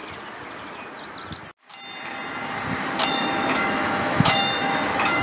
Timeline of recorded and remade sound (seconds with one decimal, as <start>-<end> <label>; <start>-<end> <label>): 0.0-3.1 recorded; 3.1-5.2 remade

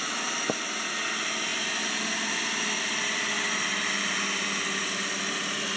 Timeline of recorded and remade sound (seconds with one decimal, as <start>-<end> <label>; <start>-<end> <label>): 0.0-5.8 recorded

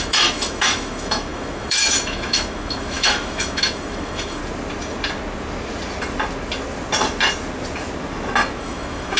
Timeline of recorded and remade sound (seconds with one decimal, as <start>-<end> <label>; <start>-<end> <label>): 0.0-4.4 remade; 4.4-8.6 recorded; 8.6-9.2 remade

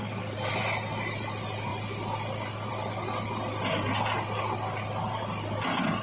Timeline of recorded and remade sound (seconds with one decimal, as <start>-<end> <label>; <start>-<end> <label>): 0.0-6.0 recorded